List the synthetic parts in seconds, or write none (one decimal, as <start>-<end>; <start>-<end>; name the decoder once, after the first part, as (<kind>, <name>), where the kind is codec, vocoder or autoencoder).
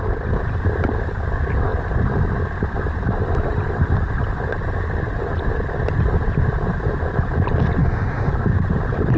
7.8-8.3 (autoencoder, DAC-VAE)